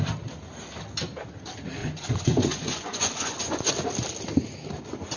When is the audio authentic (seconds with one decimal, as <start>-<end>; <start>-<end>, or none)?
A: 0.0-1.8; 3.7-5.2